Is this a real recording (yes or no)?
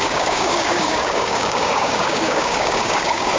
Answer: no